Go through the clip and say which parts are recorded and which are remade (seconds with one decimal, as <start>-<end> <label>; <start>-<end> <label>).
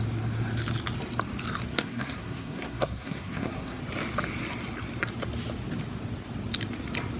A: 0.0-1.7 recorded; 1.7-3.8 remade; 3.8-7.2 recorded